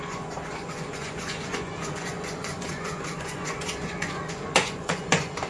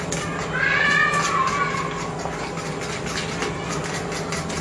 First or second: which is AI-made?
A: first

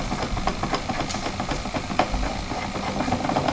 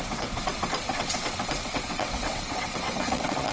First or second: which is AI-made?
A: second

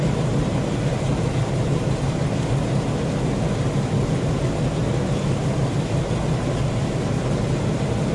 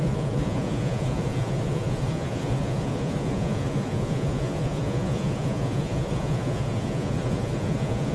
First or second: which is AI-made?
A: second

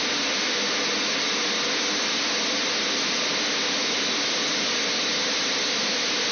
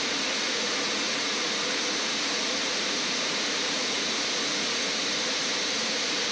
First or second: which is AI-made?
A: second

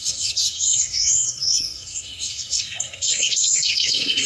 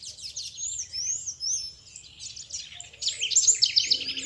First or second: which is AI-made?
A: first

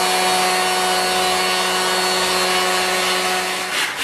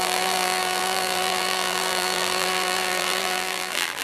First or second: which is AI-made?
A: second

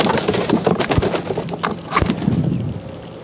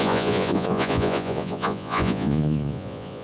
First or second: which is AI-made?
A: second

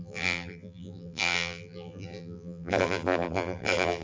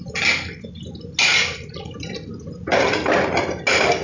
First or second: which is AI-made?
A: first